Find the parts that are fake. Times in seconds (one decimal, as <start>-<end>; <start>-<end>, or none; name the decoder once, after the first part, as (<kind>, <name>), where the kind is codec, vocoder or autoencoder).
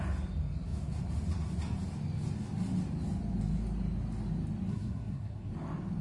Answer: 4.7-5.5 (codec, SNAC)